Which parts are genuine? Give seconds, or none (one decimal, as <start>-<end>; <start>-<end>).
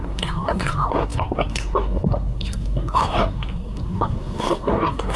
none